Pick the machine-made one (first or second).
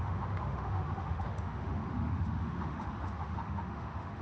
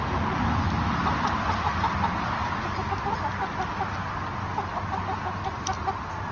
first